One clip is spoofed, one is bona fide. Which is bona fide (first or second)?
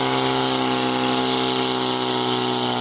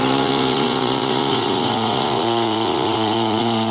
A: first